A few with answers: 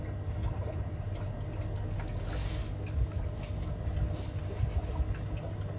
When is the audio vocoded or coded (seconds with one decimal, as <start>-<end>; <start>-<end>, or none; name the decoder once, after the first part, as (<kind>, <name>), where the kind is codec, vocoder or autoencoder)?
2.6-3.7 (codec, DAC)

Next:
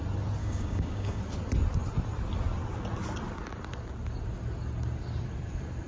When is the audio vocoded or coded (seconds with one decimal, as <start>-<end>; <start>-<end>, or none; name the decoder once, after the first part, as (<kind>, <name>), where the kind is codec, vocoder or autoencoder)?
0.4-1.2 (codec, DAC)

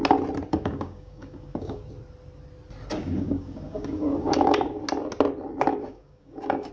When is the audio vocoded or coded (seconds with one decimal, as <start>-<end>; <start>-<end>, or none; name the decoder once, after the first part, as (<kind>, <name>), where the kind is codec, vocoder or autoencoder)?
0.5-1.9 (codec, DAC); 3.0-4.8; 5.7-6.7

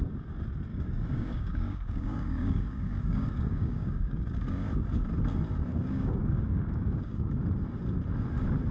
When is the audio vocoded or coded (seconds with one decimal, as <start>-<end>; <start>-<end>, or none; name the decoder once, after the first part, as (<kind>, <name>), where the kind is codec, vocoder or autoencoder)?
0.7-4.7 (codec, DAC); 5.7-7.3

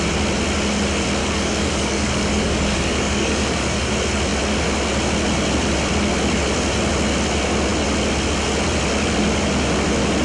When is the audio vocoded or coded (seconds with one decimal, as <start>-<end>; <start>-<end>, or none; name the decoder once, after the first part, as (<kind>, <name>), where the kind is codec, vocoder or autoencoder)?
1.2-3.9 (codec, DAC)

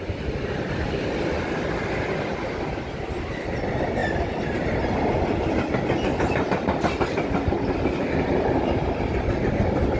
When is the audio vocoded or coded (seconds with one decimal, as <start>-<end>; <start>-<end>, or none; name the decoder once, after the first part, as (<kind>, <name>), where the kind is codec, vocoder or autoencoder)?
none

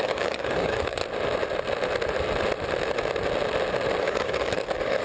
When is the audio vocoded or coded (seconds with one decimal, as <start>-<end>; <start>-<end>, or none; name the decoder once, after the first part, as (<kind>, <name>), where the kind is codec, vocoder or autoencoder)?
0.0-1.0 (codec, DAC); 4.0-5.0

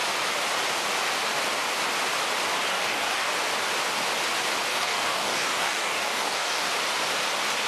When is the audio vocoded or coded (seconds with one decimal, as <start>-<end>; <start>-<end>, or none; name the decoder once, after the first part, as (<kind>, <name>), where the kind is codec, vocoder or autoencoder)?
2.7-3.3 (codec, DAC); 4.7-6.7